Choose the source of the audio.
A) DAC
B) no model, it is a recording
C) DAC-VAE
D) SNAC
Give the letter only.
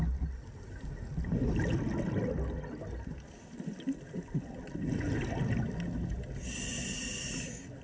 B